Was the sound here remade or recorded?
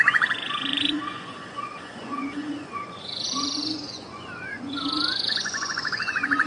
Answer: remade